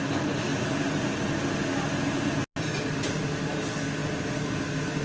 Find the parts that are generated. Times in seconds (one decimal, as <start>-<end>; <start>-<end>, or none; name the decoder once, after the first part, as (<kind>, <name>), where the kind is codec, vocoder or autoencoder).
none